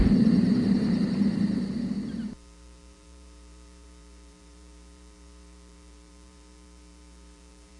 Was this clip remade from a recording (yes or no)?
yes